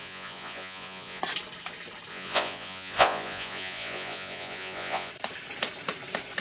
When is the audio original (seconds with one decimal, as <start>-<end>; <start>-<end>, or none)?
1.2-2.1; 5.1-6.4